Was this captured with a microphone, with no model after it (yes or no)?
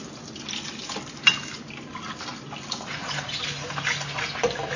yes